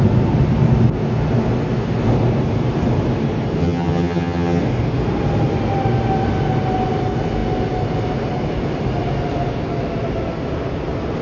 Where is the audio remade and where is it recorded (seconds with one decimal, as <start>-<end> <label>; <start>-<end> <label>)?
0.0-3.6 recorded; 3.6-4.6 remade; 4.6-11.2 recorded